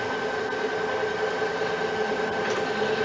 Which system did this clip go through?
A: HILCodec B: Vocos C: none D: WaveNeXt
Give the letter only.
C